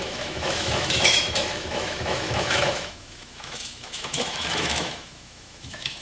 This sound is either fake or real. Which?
fake